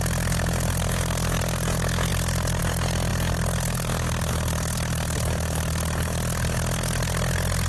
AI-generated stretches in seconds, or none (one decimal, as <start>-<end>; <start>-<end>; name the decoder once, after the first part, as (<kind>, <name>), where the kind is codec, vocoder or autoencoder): none